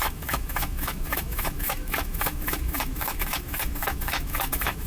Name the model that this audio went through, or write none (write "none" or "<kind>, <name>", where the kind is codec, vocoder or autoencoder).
autoencoder, DAC-VAE